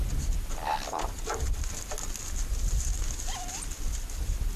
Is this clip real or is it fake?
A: real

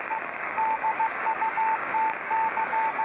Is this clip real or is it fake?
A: fake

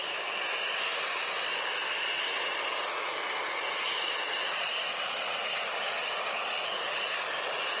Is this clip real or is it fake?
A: real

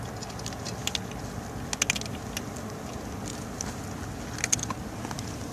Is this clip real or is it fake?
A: real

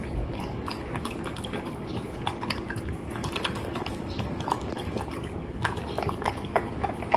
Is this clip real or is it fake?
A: fake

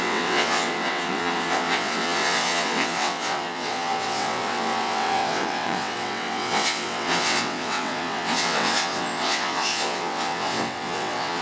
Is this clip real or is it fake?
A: fake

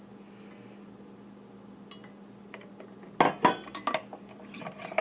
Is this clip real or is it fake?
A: real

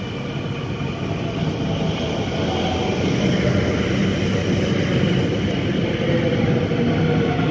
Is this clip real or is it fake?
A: real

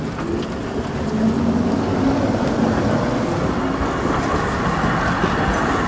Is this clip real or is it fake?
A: real